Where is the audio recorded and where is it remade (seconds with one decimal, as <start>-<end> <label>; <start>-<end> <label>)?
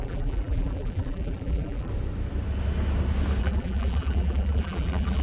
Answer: 0.0-1.9 remade; 1.9-3.4 recorded; 3.4-5.2 remade